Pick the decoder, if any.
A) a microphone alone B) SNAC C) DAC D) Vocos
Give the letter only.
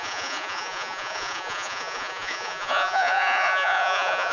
D